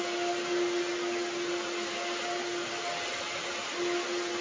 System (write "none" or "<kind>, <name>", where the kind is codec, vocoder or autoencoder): none